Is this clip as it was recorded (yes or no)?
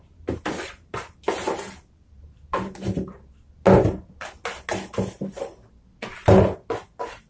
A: yes